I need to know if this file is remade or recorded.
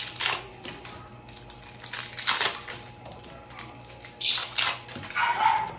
recorded